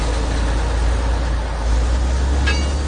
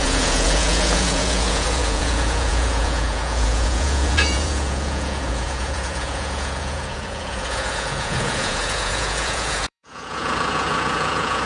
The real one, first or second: first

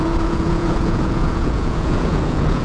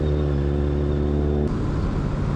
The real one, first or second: second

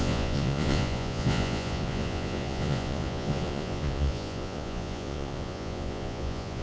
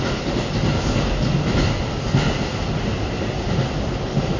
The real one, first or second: second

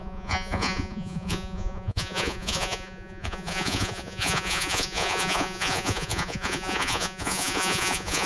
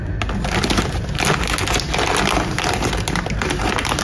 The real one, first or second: second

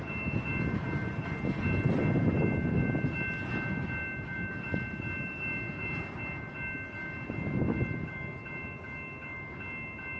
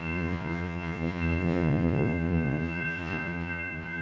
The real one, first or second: first